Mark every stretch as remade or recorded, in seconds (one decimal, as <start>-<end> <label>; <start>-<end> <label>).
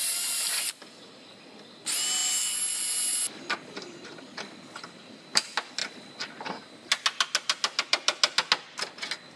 0.0-9.4 recorded